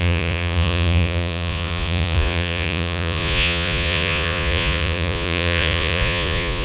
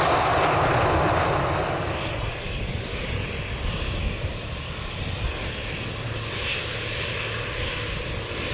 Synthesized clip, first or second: first